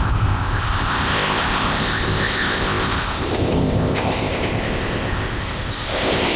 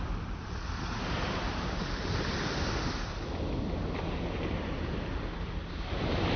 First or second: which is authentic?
second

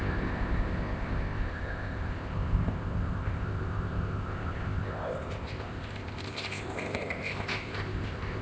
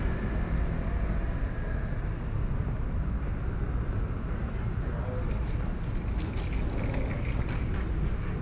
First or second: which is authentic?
second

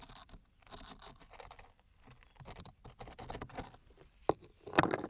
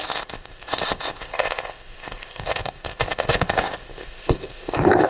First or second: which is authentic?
first